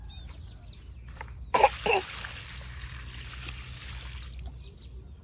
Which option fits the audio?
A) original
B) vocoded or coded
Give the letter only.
A